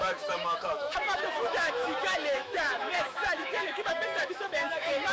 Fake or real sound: fake